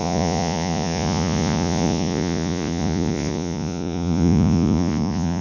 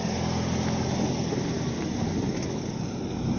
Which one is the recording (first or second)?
second